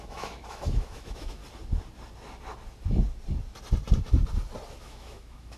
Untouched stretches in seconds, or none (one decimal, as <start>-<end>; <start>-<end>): 1.4-4.8